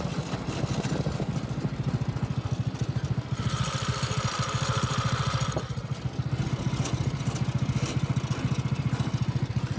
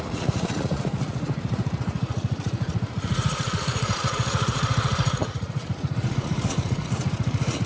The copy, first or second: second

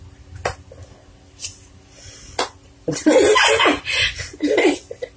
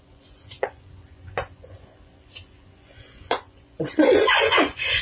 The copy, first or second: second